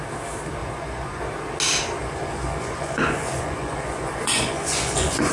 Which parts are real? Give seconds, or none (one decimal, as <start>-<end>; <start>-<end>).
0.0-0.6; 1.2-2.0